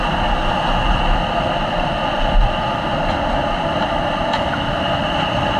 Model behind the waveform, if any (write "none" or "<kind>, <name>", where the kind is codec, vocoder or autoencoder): none